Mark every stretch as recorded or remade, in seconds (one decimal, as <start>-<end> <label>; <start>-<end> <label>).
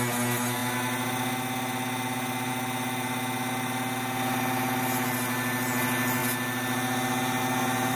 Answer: 0.0-8.0 recorded